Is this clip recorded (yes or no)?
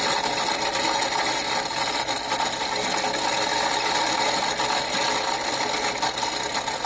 yes